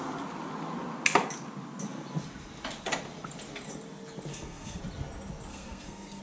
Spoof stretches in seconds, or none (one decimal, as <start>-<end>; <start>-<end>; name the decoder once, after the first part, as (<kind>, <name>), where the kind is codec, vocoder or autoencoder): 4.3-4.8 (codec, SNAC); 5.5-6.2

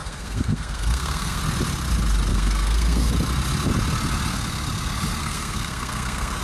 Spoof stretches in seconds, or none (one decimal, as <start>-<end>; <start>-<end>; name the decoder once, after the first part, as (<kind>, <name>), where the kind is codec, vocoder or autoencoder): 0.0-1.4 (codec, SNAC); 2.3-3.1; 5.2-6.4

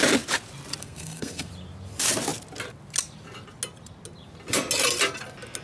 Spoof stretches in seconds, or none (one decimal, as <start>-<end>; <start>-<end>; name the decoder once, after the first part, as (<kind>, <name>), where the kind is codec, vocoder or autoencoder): 0.8-1.5 (codec, SNAC)